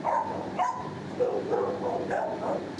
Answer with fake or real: fake